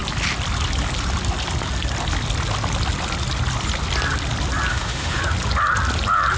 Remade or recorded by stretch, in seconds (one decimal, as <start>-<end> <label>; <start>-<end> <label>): 0.0-4.7 recorded; 4.7-5.2 remade; 5.2-6.4 recorded